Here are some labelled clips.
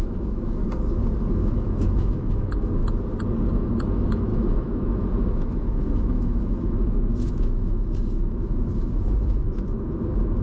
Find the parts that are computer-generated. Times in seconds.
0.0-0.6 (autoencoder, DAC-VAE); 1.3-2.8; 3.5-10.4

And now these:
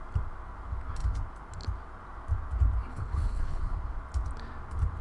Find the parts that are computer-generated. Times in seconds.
2.9-3.6 (codec, HILCodec)

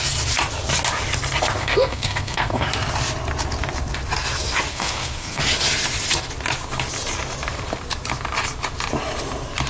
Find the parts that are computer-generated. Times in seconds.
1.6-2.7 (codec, SNAC); 4.7-5.4

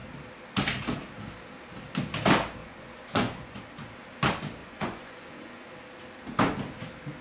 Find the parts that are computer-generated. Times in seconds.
2.6-3.6 (vocoder, Vocos); 4.6-5.7

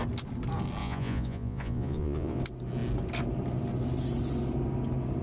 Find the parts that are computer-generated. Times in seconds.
0.8-2.4 (vocoder, Vocos)

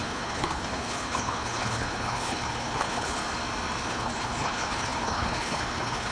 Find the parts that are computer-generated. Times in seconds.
0.0-3.2 (codec, HILCodec); 3.9-6.1

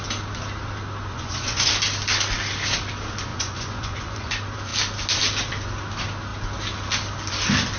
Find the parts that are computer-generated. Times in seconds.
1.1-1.7 (vocoder, Vocos); 3.3-4.3

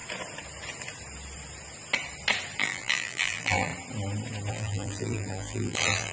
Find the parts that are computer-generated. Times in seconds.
2.6-3.7 (vocoder, BigVGAN v2); 4.5-6.1